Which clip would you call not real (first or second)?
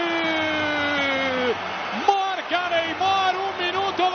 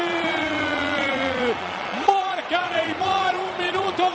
second